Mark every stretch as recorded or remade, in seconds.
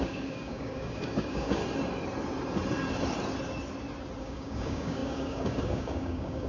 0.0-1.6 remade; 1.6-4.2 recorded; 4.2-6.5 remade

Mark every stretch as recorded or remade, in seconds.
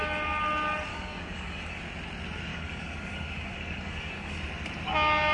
0.0-0.9 recorded; 0.9-1.8 remade; 1.8-2.5 recorded; 2.5-4.4 remade; 4.4-5.3 recorded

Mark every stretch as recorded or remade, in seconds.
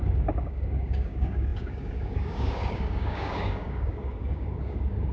0.0-5.1 remade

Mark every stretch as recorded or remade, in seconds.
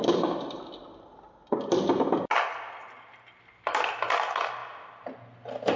0.0-5.8 recorded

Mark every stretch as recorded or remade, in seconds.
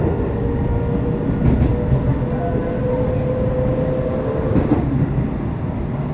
0.0-6.1 recorded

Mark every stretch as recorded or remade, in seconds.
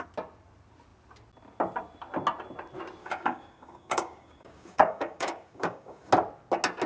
0.0-3.0 recorded; 3.0-6.1 remade; 6.1-6.9 recorded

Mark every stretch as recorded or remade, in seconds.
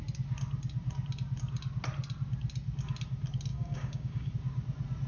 0.0-3.5 recorded; 3.5-4.3 remade; 4.3-5.1 recorded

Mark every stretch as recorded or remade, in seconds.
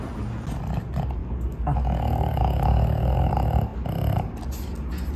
0.0-1.2 recorded; 1.2-3.3 remade; 3.3-5.2 recorded